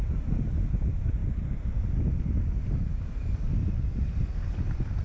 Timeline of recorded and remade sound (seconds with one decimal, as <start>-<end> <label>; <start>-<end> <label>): 0.0-5.0 recorded